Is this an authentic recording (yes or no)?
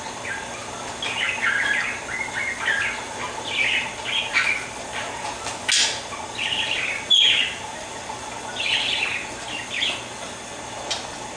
yes